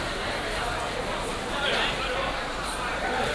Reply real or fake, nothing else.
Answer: real